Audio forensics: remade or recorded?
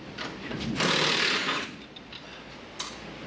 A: recorded